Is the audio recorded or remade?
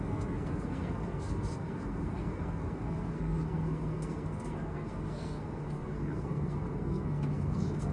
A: remade